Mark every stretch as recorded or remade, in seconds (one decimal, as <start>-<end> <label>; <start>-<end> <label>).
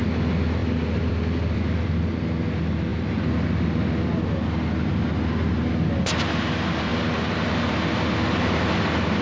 0.0-0.6 recorded; 0.6-2.2 remade; 2.2-9.2 recorded